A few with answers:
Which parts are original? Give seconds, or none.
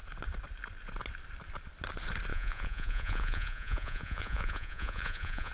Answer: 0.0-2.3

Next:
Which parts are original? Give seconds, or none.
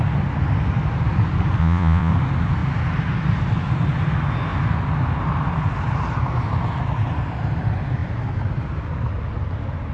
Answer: 0.0-1.6; 2.1-9.9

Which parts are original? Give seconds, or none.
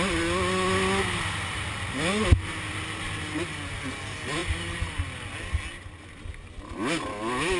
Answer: 0.0-7.6